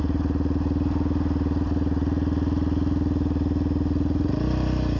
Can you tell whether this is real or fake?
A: real